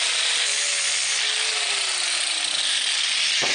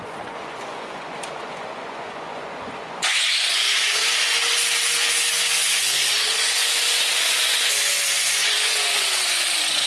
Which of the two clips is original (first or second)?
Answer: first